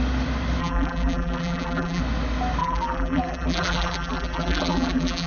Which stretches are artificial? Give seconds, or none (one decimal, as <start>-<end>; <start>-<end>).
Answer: 0.6-2.0; 2.6-5.3